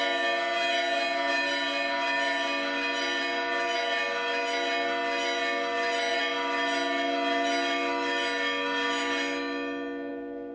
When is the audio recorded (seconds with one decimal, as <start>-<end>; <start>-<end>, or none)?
0.0-10.5